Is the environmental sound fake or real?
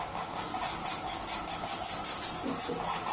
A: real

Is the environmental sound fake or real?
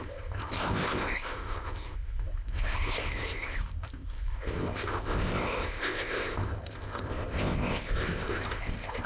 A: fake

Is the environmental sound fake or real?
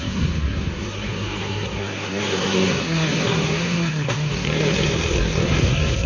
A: fake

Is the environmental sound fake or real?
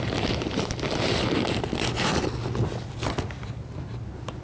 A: real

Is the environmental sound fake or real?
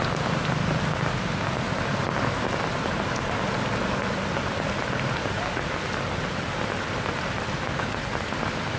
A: real